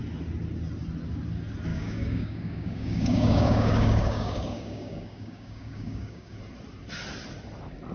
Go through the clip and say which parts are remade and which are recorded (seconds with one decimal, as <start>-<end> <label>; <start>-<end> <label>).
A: 0.0-1.7 recorded; 1.7-6.4 remade; 6.4-7.9 recorded